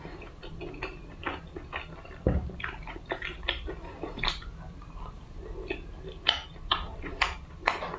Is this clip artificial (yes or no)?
no